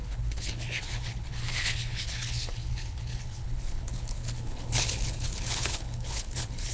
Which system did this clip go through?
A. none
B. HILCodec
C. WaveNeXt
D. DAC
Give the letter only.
B